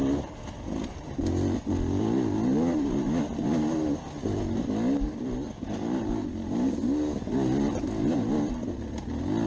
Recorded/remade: recorded